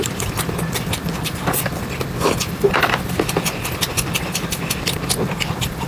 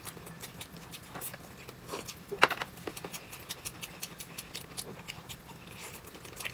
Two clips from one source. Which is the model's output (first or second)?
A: first